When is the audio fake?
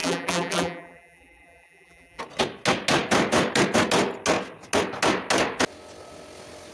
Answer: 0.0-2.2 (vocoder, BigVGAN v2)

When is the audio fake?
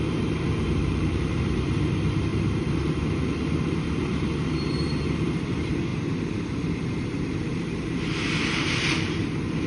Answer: 0.0-2.3 (vocoder, BigVGAN v2); 3.3-9.7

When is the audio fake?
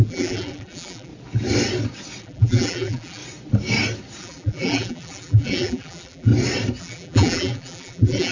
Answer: 0.0-1.1 (vocoder, BigVGAN v2); 2.2-3.2; 4.2-6.3; 6.8-8.3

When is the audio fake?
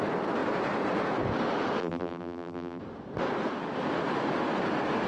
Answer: 1.8-2.8 (vocoder, BigVGAN v2)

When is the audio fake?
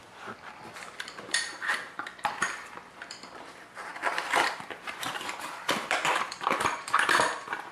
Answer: 0.0-7.7 (vocoder, BigVGAN v2)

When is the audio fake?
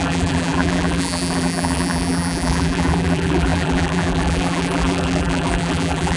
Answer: 0.0-6.2 (vocoder, BigVGAN v2)